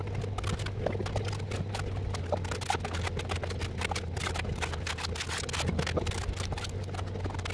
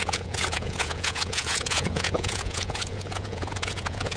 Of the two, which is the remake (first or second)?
second